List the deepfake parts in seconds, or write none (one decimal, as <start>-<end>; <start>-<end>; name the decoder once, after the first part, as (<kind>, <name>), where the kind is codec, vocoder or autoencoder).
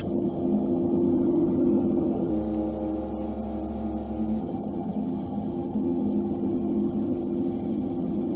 0.0-2.3 (vocoder, HiFi-GAN); 4.4-8.4